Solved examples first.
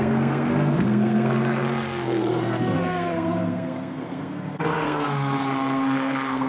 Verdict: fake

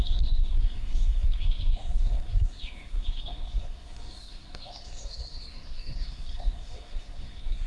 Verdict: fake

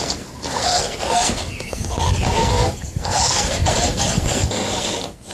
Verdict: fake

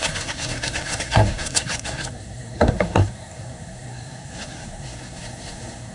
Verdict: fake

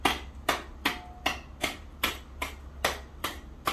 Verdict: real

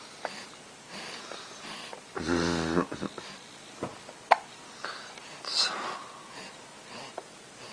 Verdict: real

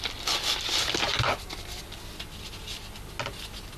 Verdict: real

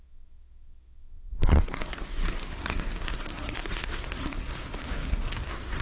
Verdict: fake